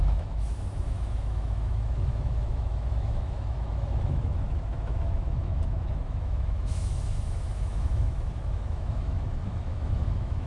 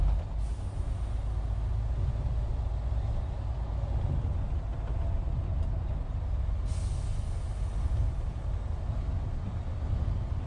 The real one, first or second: second